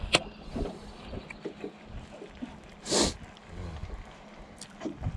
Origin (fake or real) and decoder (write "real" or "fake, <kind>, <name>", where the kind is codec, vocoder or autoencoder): real